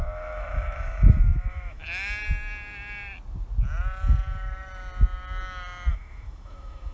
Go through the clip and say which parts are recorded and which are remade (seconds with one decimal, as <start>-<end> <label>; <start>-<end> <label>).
0.0-1.8 remade; 1.8-5.9 recorded; 5.9-6.9 remade